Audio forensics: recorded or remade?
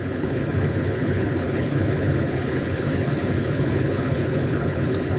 remade